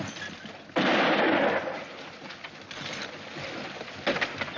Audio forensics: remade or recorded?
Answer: recorded